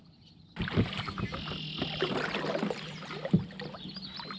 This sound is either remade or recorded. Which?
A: recorded